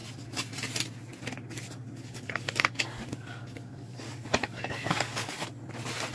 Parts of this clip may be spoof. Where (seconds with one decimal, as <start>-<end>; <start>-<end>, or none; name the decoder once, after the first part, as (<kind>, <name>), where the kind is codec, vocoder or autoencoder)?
1.8-5.5 (codec, DAC)